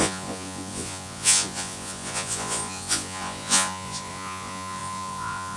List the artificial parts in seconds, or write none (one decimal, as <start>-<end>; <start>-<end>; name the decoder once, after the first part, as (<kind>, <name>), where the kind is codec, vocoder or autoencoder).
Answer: 0.0-5.6 (vocoder, Vocos)

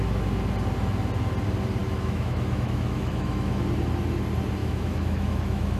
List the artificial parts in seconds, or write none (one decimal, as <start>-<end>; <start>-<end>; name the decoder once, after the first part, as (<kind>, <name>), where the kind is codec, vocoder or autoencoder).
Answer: 1.8-3.6 (autoencoder, DAC-VAE); 4.6-5.8

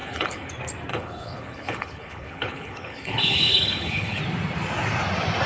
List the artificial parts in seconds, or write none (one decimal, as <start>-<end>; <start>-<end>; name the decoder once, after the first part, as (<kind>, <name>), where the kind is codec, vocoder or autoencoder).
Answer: 0.0-0.5 (codec, HILCodec); 0.9-4.2

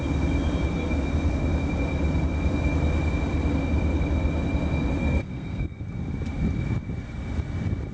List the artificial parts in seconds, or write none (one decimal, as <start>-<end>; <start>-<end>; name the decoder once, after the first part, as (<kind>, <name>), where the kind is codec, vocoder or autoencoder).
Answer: 5.0-5.8 (codec, SNAC)

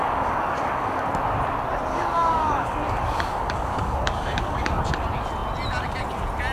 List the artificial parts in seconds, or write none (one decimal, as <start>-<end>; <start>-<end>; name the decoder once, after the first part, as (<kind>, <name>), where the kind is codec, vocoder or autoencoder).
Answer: 0.0-1.1 (codec, DAC); 1.9-4.8